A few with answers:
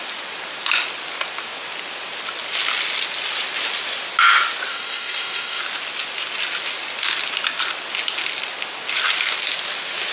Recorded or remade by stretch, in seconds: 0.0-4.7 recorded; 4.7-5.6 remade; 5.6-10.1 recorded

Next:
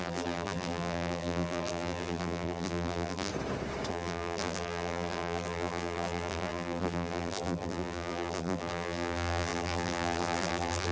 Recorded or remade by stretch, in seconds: 0.0-3.3 remade; 3.3-3.9 recorded; 3.9-10.9 remade

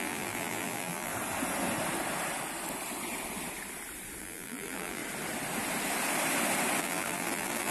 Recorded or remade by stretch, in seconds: 0.0-1.1 remade; 1.1-4.2 recorded; 4.2-5.0 remade; 5.0-6.8 recorded; 6.8-7.7 remade

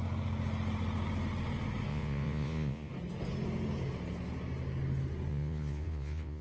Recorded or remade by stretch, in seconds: 0.0-1.9 recorded; 1.9-2.9 remade; 2.9-5.3 recorded; 5.3-6.4 remade

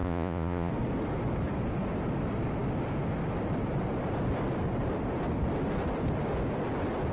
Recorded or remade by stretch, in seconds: 0.0-0.7 remade; 0.7-7.1 recorded

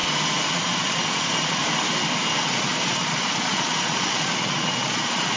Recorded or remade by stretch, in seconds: 0.0-0.5 recorded; 0.5-1.6 remade; 1.6-2.4 recorded; 2.4-5.4 remade

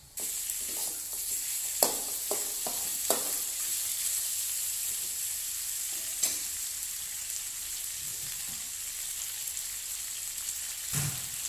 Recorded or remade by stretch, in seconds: 0.0-1.1 recorded; 1.1-1.8 remade; 1.8-2.9 recorded; 2.9-7.4 remade; 7.4-11.5 recorded